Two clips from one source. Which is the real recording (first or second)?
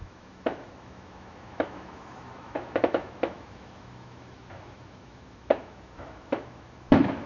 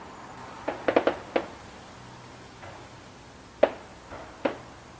second